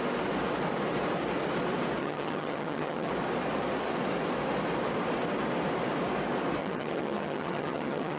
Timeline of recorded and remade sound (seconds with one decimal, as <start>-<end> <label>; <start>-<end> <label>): 0.0-2.0 recorded; 2.0-3.1 remade; 3.1-6.6 recorded; 6.6-8.2 remade